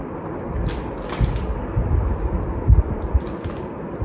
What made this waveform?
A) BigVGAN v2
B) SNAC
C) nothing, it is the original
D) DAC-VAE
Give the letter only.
C